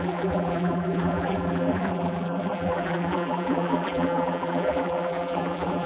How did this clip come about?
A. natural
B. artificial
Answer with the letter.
B